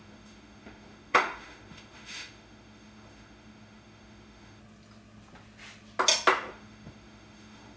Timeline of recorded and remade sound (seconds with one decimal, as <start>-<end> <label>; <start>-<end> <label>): 0.0-4.6 remade; 4.6-6.5 recorded; 6.5-7.8 remade